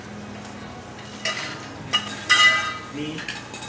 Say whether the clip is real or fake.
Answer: real